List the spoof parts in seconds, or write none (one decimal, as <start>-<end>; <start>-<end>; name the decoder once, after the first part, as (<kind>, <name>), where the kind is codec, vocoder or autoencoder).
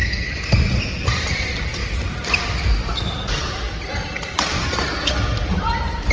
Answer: 0.8-1.8 (vocoder, BigVGAN v2); 5.5-6.1